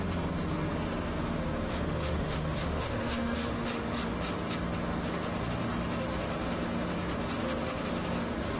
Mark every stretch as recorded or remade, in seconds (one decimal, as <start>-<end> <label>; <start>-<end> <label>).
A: 0.0-1.7 recorded; 1.7-3.7 remade; 3.7-8.6 recorded